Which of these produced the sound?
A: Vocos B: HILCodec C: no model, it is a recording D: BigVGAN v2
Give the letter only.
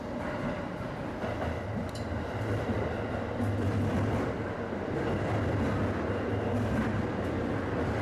C